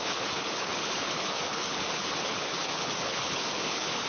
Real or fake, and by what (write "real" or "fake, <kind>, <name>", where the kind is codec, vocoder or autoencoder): fake, codec, HILCodec